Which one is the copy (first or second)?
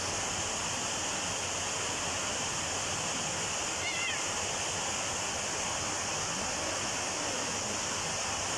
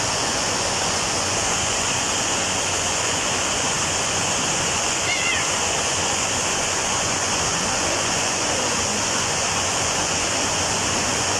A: second